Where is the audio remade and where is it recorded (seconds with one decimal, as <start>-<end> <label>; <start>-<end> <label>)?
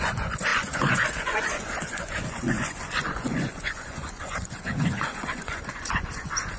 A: 0.0-6.6 remade